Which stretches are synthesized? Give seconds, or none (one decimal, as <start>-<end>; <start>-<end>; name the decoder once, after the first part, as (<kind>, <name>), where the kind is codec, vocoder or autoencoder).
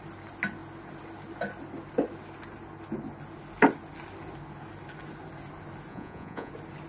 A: 5.9-6.5 (vocoder, Vocos)